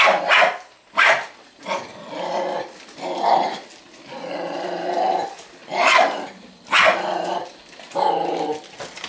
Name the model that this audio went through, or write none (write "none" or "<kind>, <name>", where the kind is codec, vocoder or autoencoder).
none